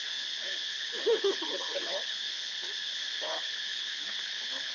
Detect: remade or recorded remade